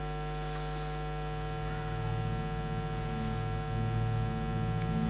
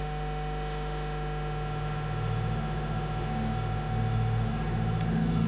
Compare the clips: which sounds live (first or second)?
first